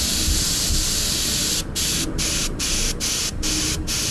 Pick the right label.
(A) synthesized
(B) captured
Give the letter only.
B